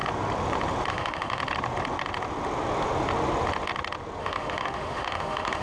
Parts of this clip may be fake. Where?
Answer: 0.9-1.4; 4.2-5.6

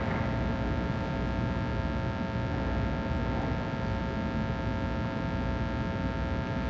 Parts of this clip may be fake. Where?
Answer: none

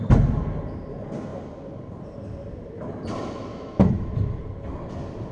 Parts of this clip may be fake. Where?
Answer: 3.5-4.4